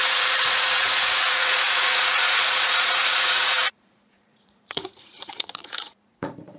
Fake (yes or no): yes